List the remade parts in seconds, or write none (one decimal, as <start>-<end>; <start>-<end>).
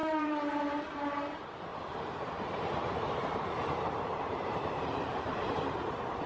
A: 0.0-6.3